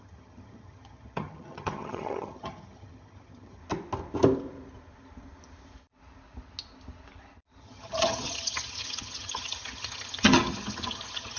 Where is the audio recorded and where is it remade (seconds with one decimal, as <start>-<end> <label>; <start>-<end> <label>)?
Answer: 0.0-3.6 remade; 3.6-7.6 recorded; 7.6-11.4 remade